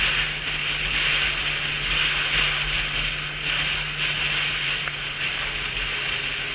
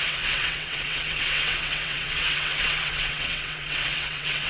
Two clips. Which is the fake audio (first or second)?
second